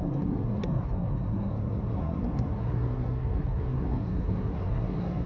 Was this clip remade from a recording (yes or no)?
yes